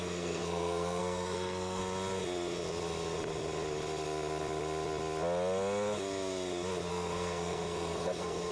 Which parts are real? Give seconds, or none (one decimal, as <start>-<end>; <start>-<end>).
1.8-6.9